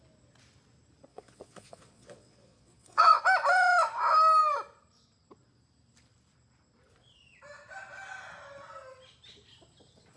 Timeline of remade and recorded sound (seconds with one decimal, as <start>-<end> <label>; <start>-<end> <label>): 0.0-1.1 recorded; 1.1-3.2 remade; 3.2-10.2 recorded